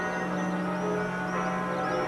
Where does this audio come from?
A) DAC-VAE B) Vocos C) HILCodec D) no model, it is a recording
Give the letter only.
D